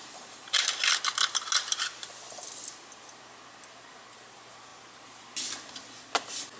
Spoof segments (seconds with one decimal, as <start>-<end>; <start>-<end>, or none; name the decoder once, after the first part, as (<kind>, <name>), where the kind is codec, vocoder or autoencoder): 0.0-0.6 (vocoder, BigVGAN v2)